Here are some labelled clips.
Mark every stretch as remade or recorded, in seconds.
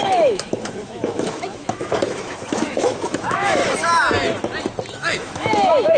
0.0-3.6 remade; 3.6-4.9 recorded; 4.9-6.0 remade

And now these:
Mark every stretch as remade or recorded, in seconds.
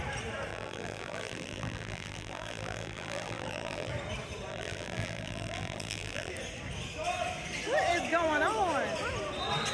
0.0-0.5 recorded; 0.5-3.9 remade; 3.9-4.5 recorded; 4.5-6.3 remade; 6.3-9.7 recorded